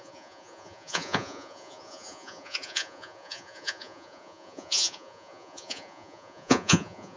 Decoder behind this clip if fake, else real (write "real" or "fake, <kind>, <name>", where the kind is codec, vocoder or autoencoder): fake, vocoder, Vocos